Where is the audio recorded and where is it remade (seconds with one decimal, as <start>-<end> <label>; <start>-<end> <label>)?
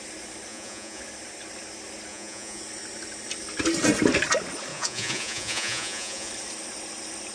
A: 0.0-0.5 recorded; 0.5-1.0 remade; 1.0-2.1 recorded; 2.1-2.6 remade; 2.6-4.7 recorded; 4.7-6.3 remade; 6.3-7.3 recorded